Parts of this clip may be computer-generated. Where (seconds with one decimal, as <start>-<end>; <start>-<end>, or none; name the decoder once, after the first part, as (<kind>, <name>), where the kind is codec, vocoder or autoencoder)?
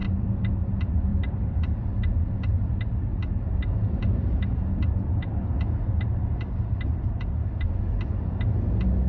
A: 0.0-0.5 (vocoder, BigVGAN v2); 1.1-2.7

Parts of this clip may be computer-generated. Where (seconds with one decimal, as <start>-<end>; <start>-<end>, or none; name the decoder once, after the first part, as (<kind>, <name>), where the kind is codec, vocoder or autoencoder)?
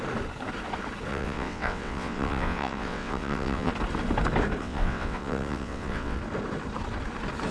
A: 1.1-3.7 (vocoder, WaveNeXt); 4.6-6.2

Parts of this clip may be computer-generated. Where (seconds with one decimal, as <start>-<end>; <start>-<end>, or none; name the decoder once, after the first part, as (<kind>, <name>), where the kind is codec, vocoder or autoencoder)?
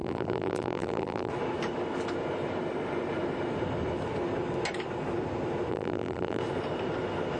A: 0.0-1.3 (vocoder, BigVGAN v2); 5.7-6.4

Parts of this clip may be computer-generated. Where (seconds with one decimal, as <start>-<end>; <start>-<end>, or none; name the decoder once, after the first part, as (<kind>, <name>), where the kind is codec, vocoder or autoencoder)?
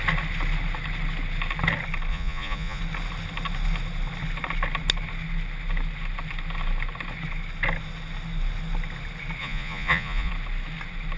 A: 2.1-2.8 (vocoder, Vocos); 9.4-10.3